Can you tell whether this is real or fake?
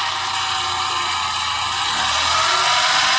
real